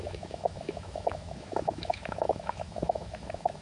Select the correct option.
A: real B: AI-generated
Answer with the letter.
B